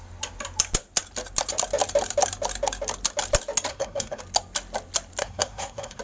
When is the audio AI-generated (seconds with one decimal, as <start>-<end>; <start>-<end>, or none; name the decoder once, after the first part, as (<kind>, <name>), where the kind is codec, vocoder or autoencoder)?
3.7-4.2 (codec, SNAC); 5.2-6.0